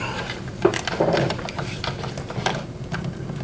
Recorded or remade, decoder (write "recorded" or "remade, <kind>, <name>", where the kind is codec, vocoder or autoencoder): recorded